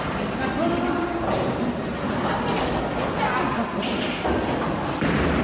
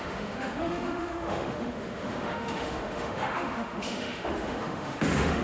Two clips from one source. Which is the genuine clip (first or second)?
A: first